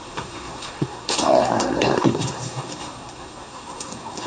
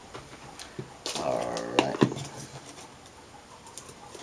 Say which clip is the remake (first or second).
first